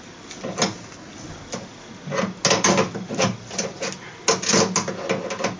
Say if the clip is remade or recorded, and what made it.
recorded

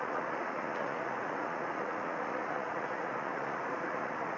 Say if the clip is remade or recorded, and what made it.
remade, vocoder, Vocos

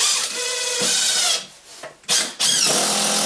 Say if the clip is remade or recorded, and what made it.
recorded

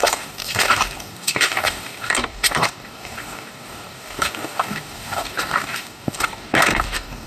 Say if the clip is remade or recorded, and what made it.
remade, codec, DAC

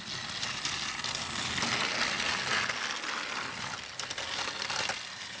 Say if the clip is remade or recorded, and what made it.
recorded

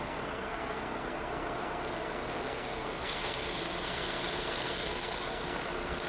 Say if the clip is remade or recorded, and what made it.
remade, codec, SNAC